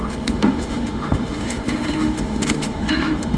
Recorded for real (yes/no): no